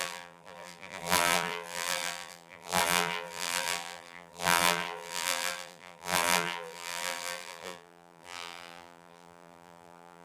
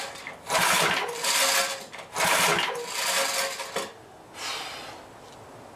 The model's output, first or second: first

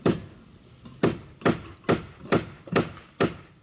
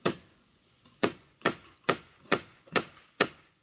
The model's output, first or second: second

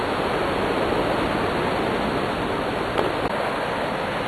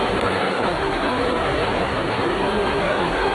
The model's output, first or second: second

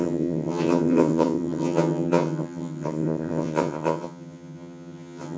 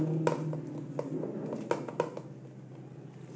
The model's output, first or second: first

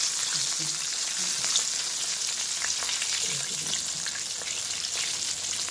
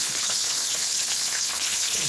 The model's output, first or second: second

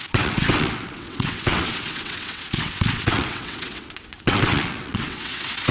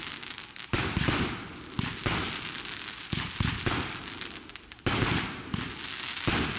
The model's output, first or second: first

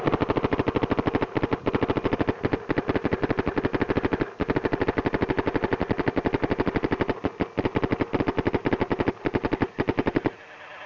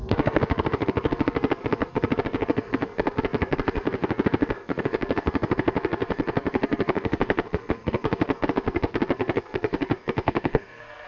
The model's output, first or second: second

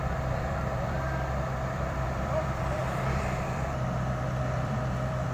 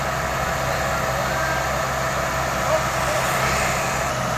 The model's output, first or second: first